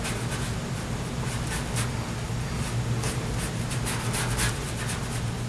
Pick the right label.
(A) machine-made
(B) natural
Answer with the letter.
B